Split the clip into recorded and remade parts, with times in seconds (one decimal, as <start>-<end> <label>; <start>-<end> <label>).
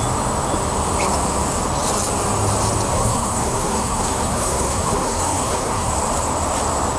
0.0-2.9 recorded; 2.9-5.9 remade; 5.9-7.0 recorded